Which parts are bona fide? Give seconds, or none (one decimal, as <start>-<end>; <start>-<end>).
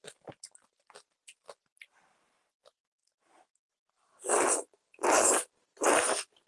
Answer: 0.0-6.5